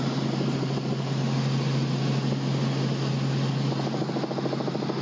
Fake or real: real